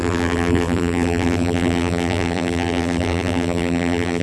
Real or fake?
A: fake